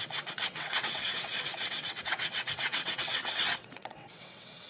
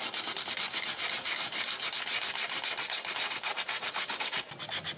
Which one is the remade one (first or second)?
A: first